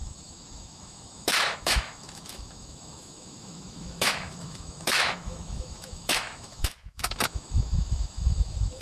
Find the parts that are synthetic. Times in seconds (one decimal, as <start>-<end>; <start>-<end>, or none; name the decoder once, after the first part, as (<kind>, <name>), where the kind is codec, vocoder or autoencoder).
0.0-8.8 (autoencoder, DAC-VAE)